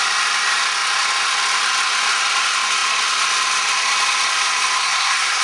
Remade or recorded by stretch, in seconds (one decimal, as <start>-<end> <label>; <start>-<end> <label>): 0.0-4.8 recorded; 4.8-5.4 remade